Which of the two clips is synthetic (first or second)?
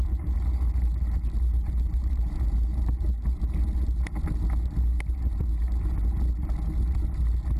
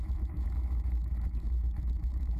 second